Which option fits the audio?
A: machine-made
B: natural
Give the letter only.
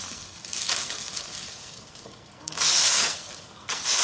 A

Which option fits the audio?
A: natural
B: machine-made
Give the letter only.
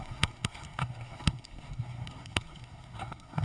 B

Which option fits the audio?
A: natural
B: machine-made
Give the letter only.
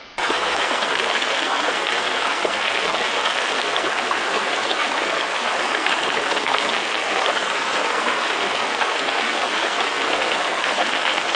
B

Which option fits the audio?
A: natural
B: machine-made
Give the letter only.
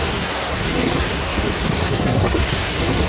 B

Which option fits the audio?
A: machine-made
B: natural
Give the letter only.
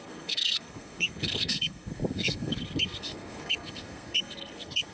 A